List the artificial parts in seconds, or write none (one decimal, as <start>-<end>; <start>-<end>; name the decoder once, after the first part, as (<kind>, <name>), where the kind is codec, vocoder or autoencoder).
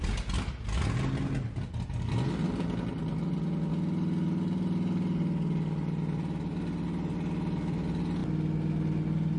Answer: none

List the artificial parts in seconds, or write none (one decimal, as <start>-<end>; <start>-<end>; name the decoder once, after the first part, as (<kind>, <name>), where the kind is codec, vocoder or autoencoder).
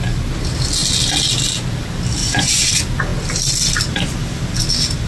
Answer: 2.2-2.7 (vocoder, Vocos)